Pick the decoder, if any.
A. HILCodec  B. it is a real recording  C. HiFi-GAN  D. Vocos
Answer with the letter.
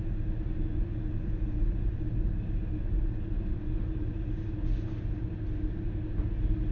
B